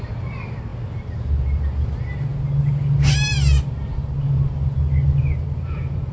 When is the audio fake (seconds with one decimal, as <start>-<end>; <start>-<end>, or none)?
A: none